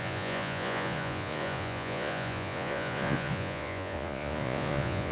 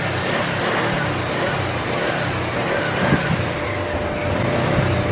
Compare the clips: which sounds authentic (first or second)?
second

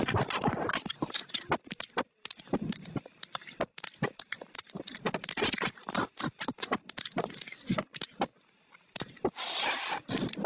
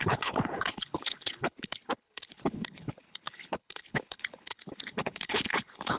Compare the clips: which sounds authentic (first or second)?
first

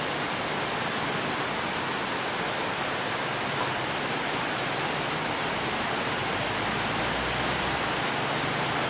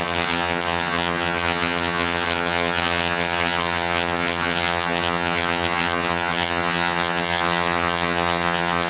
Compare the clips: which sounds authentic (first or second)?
first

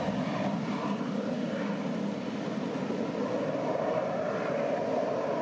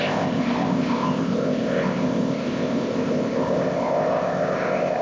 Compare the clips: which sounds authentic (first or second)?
first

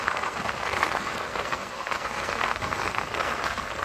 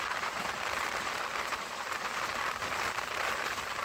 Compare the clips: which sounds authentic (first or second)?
second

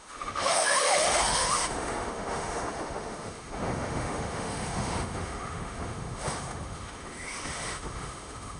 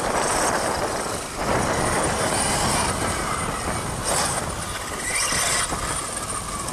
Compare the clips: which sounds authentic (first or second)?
second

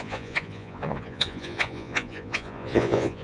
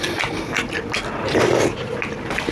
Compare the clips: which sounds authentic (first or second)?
second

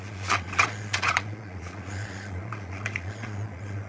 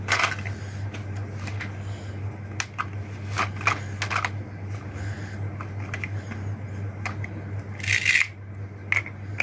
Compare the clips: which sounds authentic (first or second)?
second